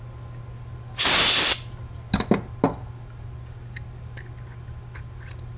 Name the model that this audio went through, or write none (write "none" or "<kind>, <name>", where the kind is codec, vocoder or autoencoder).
none